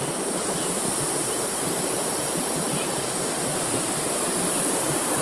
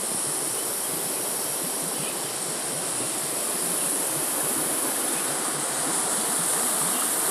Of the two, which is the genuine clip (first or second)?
second